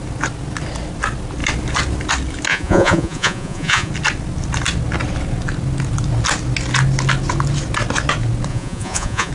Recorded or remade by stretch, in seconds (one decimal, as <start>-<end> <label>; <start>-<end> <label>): 0.0-2.5 recorded; 2.5-3.9 remade; 3.9-8.5 recorded; 8.5-9.3 remade